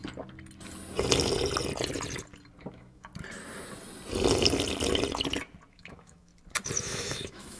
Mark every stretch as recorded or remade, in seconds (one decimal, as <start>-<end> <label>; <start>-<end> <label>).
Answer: 0.0-2.7 recorded; 2.7-3.1 remade; 3.1-5.7 recorded; 5.7-6.3 remade; 6.3-6.8 recorded; 6.8-7.6 remade